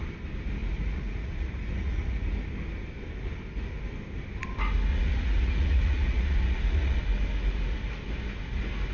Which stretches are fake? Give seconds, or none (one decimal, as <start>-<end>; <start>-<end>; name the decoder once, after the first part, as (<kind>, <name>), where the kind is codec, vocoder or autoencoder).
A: 0.6-2.3 (vocoder, Vocos); 4.9-7.0